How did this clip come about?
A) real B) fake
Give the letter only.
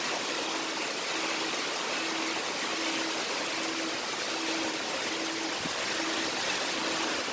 A